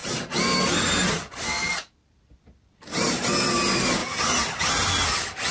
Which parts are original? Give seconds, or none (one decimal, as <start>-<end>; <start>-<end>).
0.0-5.5